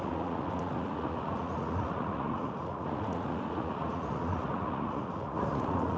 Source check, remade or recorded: remade